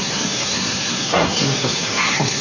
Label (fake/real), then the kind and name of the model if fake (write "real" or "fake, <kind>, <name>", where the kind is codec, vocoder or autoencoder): fake, codec, SNAC